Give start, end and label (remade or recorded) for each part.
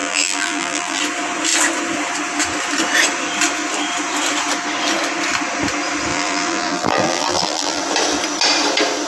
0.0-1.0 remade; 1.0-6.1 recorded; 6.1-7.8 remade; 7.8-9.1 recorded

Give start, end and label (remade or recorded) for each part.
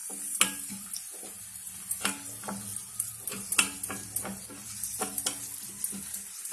0.0-6.5 recorded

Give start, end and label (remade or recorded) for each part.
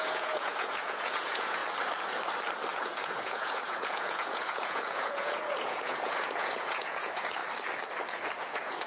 0.0-1.6 remade; 1.6-2.7 recorded; 2.7-7.4 remade; 7.4-8.1 recorded; 8.1-8.9 remade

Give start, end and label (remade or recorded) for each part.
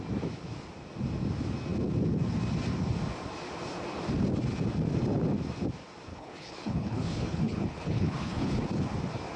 0.0-6.1 recorded; 6.1-8.6 remade; 8.6-9.4 recorded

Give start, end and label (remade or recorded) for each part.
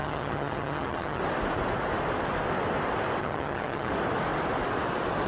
0.0-1.2 remade; 1.2-3.2 recorded; 3.2-3.9 remade; 3.9-5.3 recorded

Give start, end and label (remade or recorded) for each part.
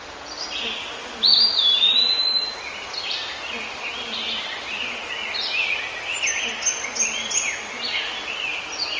0.0-9.0 recorded